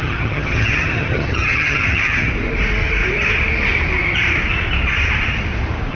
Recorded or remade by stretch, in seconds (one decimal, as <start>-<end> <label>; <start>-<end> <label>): 0.0-2.3 remade; 2.3-5.9 recorded